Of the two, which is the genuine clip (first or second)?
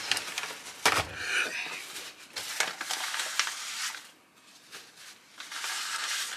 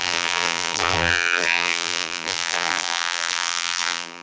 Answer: first